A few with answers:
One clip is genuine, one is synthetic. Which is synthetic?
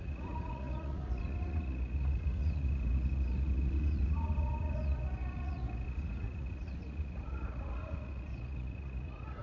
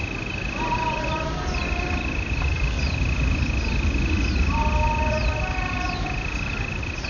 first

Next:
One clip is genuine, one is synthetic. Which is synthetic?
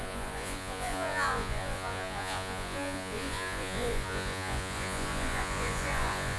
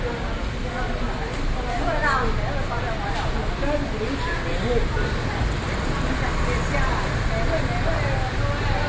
first